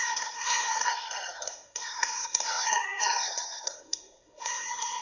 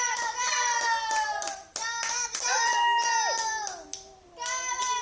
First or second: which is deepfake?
first